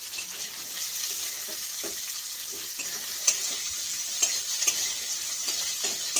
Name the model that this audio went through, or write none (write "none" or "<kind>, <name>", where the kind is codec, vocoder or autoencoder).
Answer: none